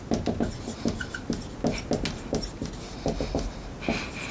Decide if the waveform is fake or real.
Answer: real